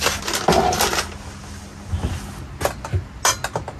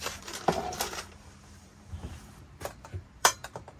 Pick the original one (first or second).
first